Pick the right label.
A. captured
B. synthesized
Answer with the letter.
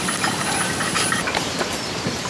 B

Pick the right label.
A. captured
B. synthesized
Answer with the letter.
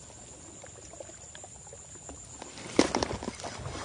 A